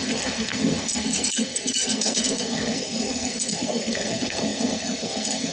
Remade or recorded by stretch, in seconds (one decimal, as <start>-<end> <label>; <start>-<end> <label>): 0.0-5.5 remade